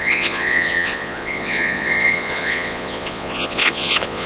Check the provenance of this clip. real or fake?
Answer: fake